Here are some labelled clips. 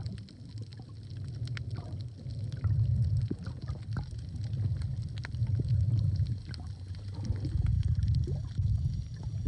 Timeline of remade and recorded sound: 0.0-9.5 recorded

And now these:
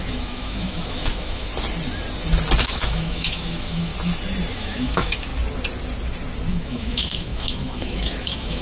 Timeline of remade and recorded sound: 0.0-1.5 remade; 1.5-2.6 recorded; 2.6-3.9 remade; 3.9-4.5 recorded; 4.5-5.3 remade; 5.3-6.5 recorded; 6.5-8.6 remade

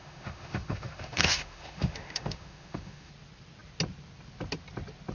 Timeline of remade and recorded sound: 0.0-3.1 remade; 3.1-5.1 recorded

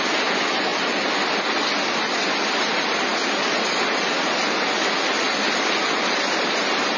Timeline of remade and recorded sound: 0.0-7.0 recorded